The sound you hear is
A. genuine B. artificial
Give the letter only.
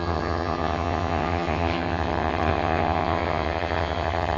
B